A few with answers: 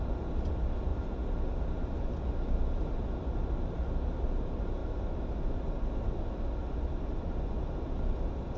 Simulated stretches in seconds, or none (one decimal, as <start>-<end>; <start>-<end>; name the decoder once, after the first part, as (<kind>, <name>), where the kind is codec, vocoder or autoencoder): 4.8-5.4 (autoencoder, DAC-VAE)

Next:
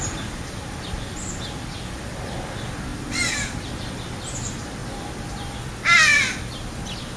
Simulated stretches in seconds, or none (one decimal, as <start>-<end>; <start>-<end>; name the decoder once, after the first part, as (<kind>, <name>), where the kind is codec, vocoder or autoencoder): 0.0-4.8 (vocoder, BigVGAN v2)

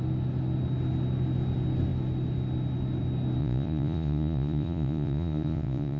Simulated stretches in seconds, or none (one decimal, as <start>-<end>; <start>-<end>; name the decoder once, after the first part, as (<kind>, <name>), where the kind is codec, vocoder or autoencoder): 3.4-6.0 (vocoder, Vocos)

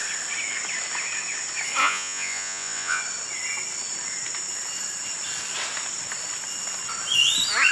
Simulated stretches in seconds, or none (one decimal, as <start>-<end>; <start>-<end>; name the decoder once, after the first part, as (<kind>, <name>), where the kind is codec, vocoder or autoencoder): 1.8-3.0 (vocoder, Vocos)